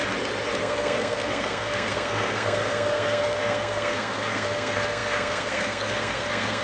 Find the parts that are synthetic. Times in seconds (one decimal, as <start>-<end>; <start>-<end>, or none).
0.6-6.6